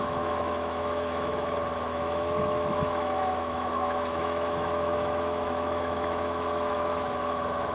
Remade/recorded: remade